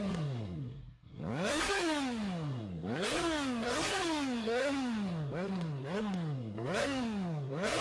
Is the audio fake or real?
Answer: fake